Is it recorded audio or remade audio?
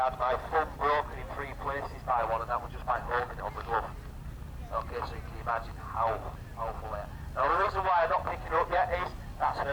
recorded